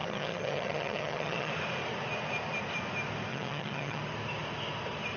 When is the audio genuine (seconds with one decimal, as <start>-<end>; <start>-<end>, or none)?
1.5-3.3; 4.0-5.2